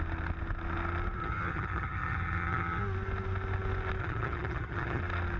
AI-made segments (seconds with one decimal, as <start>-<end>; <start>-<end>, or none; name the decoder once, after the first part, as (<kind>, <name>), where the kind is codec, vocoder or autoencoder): 1.2-2.8 (vocoder, HiFi-GAN); 4.0-5.0